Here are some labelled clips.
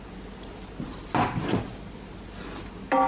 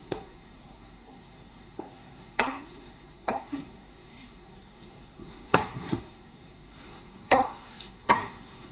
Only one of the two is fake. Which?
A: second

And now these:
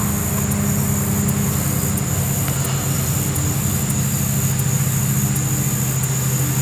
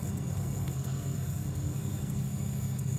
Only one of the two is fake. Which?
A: second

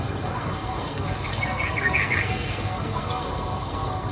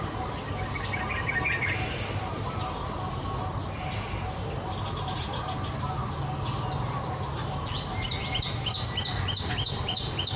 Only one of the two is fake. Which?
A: first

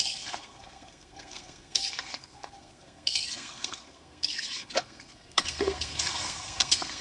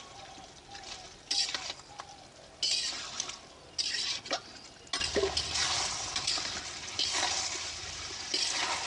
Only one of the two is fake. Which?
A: first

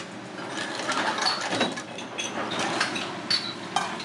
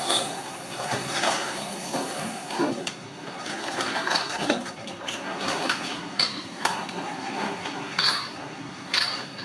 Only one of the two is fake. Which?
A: second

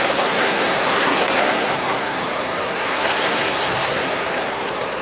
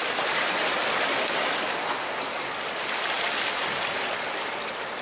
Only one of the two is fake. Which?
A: first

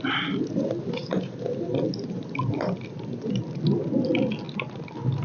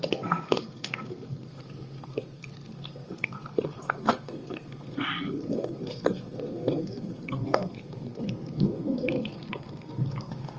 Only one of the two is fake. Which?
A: second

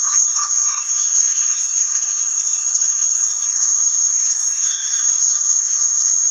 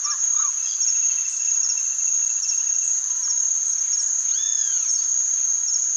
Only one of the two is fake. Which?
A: first